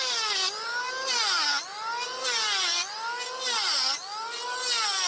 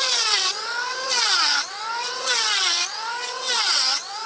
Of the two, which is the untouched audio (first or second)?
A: first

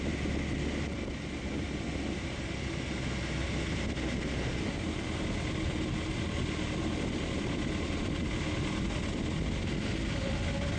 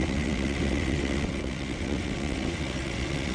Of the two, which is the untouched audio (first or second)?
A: first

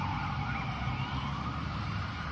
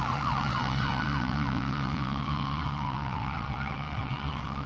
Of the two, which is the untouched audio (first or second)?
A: first